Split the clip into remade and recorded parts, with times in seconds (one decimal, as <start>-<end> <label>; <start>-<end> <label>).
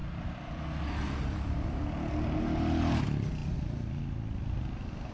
0.0-5.1 recorded